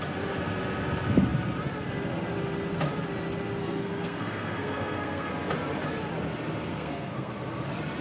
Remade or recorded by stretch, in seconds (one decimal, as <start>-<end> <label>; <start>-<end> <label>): 0.0-3.6 recorded; 3.6-5.3 remade; 5.3-6.7 recorded; 6.7-7.3 remade; 7.3-8.0 recorded